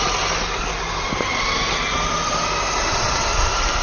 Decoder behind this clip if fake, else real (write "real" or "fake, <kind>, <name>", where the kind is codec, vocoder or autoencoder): real